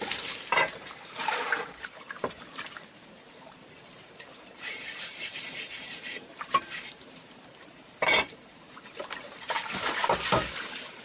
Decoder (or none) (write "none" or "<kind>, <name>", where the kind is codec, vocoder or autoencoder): vocoder, BigVGAN v2